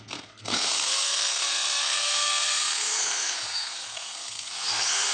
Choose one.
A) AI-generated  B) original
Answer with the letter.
A